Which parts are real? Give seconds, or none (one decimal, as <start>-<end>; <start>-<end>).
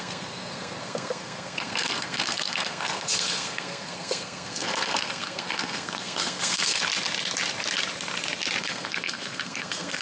6.8-8.6